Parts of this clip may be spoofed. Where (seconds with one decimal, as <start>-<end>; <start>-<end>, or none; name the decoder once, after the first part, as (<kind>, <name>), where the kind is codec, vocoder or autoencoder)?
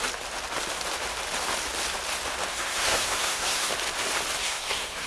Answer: 2.5-3.7 (codec, SNAC); 4.4-5.1